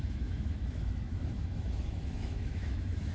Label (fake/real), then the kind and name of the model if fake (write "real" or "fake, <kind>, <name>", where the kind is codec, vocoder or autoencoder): fake, autoencoder, DAC-VAE